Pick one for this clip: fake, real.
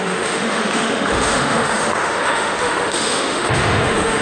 fake